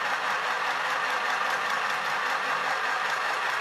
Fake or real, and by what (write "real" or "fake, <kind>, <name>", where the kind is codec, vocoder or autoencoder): real